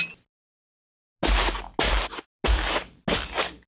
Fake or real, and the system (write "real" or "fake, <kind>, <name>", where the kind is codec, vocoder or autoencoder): real